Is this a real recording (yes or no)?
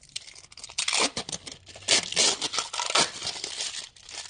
yes